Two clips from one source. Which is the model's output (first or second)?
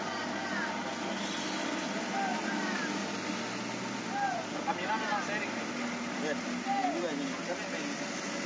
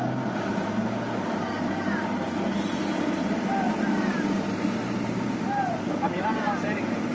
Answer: second